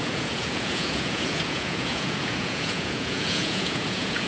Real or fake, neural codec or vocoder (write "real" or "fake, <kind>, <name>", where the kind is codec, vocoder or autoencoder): fake, vocoder, Vocos